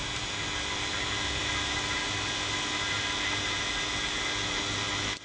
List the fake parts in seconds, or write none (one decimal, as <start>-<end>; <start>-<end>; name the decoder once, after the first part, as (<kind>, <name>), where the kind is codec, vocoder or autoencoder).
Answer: none